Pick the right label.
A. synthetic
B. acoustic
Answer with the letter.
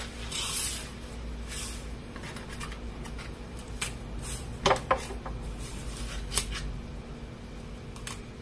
B